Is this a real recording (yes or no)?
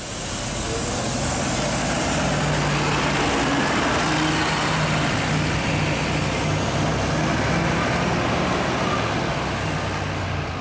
yes